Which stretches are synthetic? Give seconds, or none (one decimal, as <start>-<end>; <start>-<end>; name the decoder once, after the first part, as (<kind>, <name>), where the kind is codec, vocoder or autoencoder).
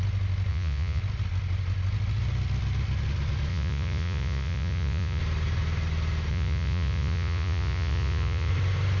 0.5-1.0 (vocoder, Vocos); 3.5-5.2; 6.3-8.5